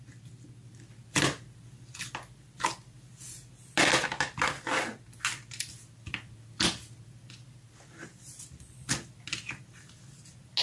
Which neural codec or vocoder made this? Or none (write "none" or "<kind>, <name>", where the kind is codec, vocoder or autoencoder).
none